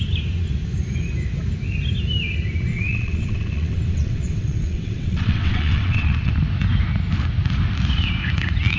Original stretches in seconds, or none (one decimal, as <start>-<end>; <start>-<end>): 0.0-2.7; 6.3-8.8